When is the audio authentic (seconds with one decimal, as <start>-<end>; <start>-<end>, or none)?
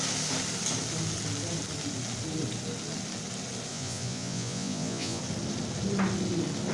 0.0-3.7; 5.2-6.7